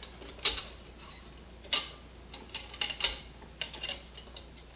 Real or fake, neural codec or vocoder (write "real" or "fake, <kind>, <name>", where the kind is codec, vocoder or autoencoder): real